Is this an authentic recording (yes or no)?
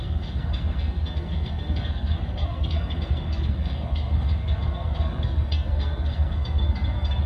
no